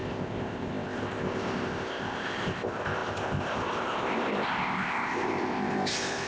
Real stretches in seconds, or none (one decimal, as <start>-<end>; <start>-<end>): none